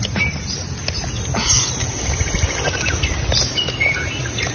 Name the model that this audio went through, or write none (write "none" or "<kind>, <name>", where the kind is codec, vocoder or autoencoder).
none